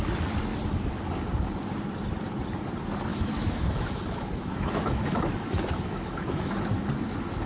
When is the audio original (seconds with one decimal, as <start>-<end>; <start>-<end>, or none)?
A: 0.0-3.1; 6.9-7.5